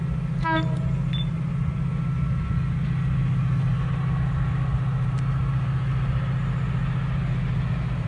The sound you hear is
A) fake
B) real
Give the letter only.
B